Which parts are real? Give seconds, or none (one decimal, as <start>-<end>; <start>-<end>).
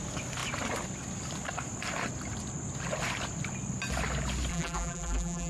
0.0-4.5